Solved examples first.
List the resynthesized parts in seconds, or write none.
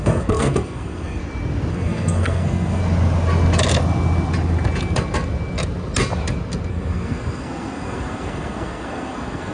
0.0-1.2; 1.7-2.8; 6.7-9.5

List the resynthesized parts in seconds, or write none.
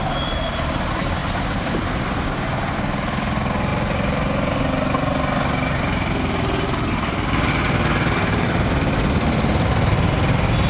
none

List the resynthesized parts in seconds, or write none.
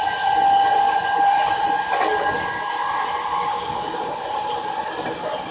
none